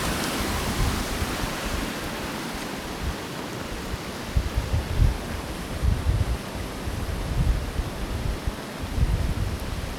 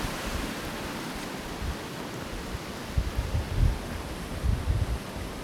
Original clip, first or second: second